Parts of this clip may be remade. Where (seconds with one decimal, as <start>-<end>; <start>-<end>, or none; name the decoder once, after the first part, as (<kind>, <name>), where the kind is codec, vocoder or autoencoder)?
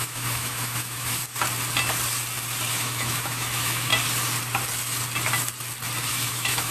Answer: 0.0-1.2 (autoencoder, DAC-VAE); 2.7-3.9; 6.1-6.7